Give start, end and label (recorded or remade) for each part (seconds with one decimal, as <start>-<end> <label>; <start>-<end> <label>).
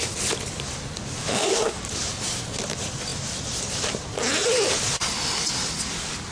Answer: 0.0-1.2 recorded; 1.2-1.8 remade; 1.8-6.3 recorded